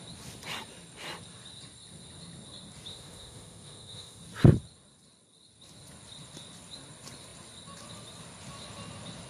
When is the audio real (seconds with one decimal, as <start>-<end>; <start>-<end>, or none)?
0.0-2.9; 4.2-9.3